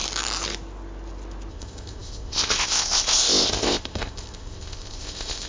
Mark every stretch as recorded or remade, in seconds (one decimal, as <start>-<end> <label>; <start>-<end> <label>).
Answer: 0.0-1.5 recorded; 1.5-5.5 remade